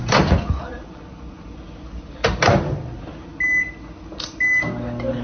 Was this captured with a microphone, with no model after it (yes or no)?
yes